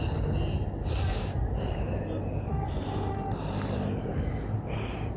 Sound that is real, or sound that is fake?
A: real